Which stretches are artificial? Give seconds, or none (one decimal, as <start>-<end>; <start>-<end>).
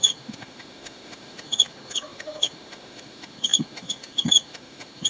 0.0-5.1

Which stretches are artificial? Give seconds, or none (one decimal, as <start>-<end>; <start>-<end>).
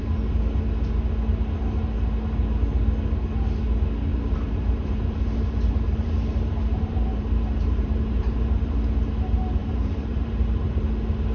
4.1-8.7; 9.6-10.8